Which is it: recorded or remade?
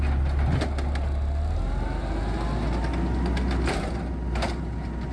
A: recorded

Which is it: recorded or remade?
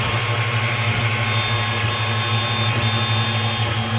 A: recorded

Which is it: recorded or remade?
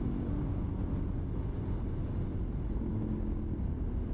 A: recorded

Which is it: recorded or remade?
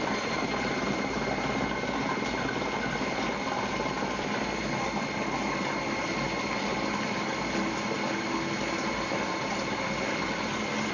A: recorded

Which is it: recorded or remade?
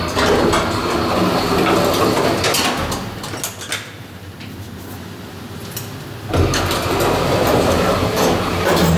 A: recorded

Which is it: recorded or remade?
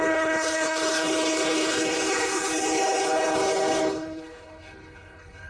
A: remade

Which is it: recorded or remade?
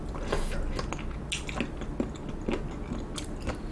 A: recorded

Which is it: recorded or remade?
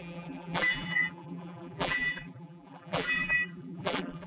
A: remade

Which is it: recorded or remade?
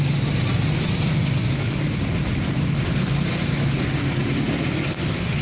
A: recorded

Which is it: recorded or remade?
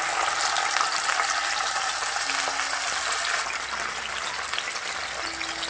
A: recorded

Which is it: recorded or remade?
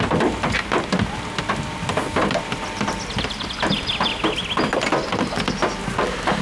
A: recorded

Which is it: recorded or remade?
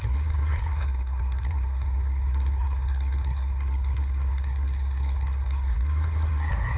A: remade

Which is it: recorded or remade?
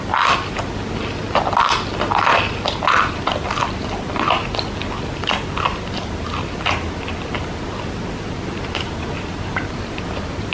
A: recorded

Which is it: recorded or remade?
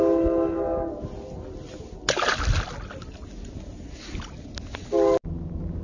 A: recorded